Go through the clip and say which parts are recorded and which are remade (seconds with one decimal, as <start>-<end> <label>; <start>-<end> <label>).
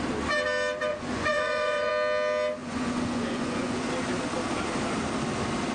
0.0-0.9 recorded; 0.9-1.9 remade; 1.9-2.6 recorded; 2.6-3.9 remade; 3.9-5.7 recorded